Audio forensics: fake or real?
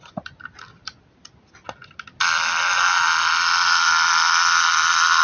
real